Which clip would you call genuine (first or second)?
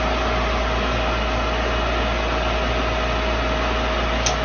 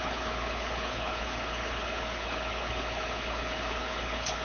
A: first